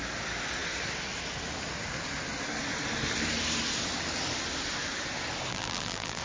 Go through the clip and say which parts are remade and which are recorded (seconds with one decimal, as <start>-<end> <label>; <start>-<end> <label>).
0.0-5.5 recorded; 5.5-6.2 remade